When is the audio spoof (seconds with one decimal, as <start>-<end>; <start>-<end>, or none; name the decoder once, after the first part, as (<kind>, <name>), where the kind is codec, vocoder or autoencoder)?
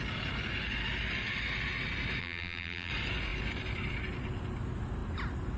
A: 2.2-2.9 (vocoder, BigVGAN v2)